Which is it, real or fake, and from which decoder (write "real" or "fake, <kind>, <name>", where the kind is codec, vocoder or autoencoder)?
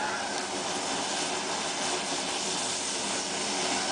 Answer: real